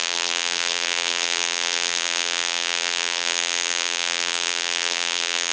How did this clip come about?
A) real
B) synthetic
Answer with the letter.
B